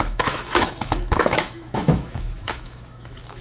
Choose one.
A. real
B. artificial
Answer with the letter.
B